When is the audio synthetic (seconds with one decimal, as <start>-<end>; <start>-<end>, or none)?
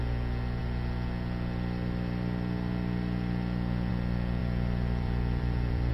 4.4-5.9